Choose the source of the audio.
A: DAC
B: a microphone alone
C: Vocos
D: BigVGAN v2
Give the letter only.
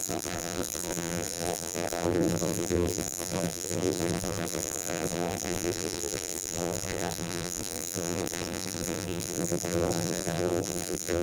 D